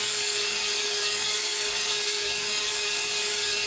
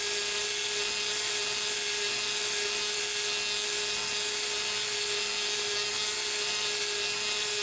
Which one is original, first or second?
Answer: second